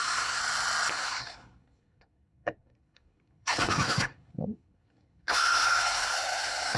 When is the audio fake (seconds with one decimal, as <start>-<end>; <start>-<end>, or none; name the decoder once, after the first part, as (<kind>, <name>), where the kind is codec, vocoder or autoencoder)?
0.0-0.4 (codec, SNAC); 0.9-6.8